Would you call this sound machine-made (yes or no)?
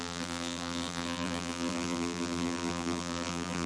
yes